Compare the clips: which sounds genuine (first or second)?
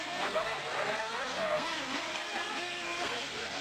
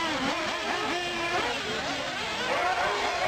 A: second